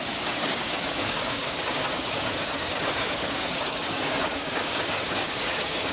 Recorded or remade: remade